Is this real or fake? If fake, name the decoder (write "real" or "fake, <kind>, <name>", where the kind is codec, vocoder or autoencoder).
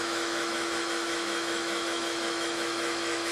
fake, autoencoder, DAC-VAE